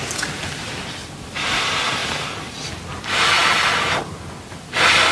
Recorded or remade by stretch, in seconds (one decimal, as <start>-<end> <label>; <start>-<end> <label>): 0.0-5.1 recorded